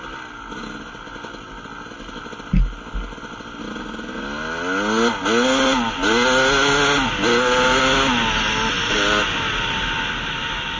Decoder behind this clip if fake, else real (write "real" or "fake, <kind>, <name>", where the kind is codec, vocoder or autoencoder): real